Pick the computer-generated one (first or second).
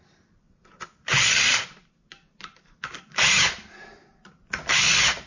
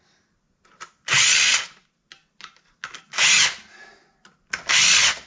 first